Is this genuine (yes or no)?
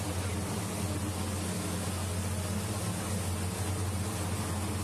yes